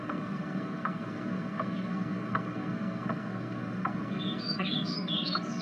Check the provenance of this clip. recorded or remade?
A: remade